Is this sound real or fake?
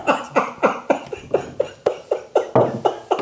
real